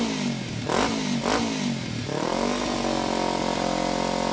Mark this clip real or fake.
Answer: real